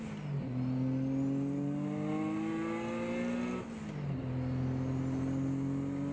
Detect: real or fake real